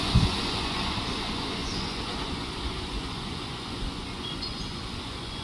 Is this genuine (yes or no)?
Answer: no